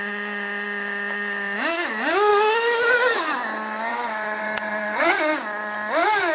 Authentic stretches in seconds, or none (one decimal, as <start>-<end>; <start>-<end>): 0.0-3.9; 5.2-6.3